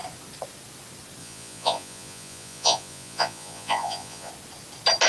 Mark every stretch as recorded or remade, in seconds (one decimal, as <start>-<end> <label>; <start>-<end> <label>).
0.0-1.2 recorded; 1.2-4.3 remade; 4.3-5.1 recorded